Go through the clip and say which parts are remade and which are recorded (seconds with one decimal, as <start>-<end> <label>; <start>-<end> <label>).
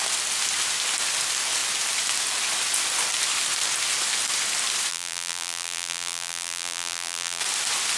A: 0.0-4.9 recorded; 4.9-7.4 remade; 7.4-8.0 recorded